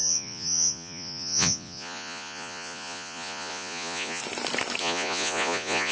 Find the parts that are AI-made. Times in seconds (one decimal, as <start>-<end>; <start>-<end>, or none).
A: 0.0-4.2; 4.8-5.9